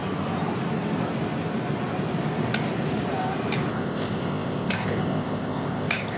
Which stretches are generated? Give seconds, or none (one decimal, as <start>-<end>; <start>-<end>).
3.7-6.2